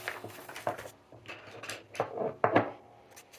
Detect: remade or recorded recorded